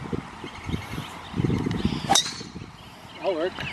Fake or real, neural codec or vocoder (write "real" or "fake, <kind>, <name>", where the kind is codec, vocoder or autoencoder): real